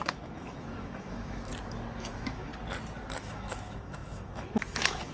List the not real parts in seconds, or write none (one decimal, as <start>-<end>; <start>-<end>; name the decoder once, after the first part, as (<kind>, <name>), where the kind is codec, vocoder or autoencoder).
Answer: 0.0-1.5 (autoencoder, DAC-VAE); 2.0-2.5; 3.2-5.1